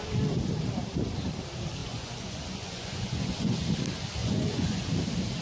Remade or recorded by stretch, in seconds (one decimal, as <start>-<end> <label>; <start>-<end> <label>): 0.0-1.8 recorded; 1.8-3.7 remade; 3.7-4.2 recorded; 4.2-4.9 remade; 4.9-5.4 recorded